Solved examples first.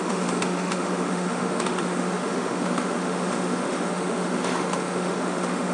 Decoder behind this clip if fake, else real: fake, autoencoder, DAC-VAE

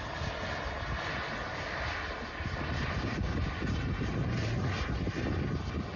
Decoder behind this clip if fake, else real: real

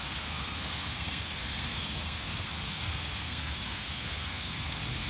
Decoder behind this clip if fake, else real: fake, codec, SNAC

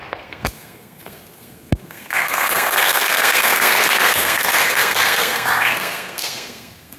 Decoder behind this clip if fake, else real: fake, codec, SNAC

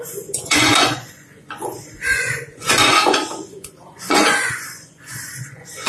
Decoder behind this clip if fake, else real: fake, vocoder, Vocos